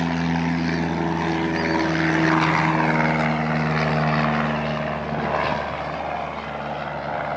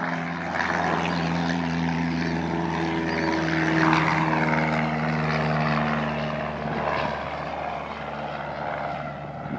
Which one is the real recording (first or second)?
first